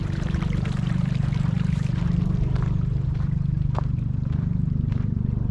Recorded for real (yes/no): no